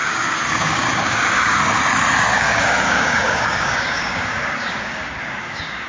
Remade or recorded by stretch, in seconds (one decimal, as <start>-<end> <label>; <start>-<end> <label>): 0.0-1.6 remade; 1.6-2.3 recorded; 2.3-5.9 remade